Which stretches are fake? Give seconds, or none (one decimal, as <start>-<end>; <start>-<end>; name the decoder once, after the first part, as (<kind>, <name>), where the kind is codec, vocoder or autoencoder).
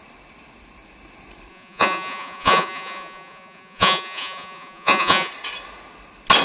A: 1.5-5.3 (vocoder, Vocos)